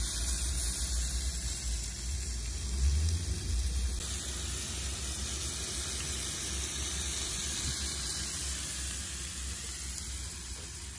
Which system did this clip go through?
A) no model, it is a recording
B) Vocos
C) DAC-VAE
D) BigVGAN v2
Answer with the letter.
A